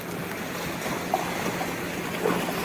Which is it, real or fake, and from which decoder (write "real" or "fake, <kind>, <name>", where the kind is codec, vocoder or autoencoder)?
real